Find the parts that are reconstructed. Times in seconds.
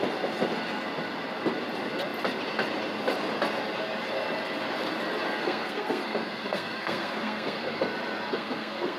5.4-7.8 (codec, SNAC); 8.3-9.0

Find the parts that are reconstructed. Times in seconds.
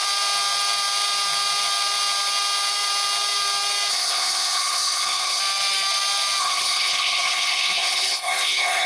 3.9-5.4 (codec, HILCodec); 6.4-8.9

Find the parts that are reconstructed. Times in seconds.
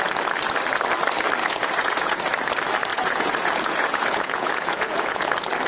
1.4-2.2 (vocoder, Vocos); 2.9-5.3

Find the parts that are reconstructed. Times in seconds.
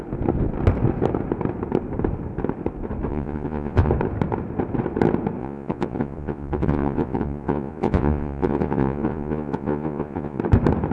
3.1-3.9 (vocoder, Vocos); 5.4-10.4